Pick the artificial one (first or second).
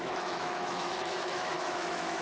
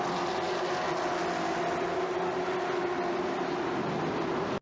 first